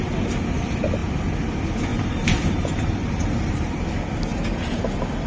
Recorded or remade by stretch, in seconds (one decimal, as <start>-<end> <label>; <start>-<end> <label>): 0.0-1.0 recorded; 1.0-1.5 remade; 1.5-1.9 recorded; 1.9-3.9 remade; 3.9-4.3 recorded; 4.3-4.8 remade; 4.8-5.3 recorded